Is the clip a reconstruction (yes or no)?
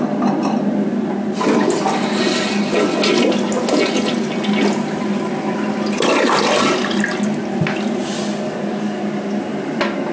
no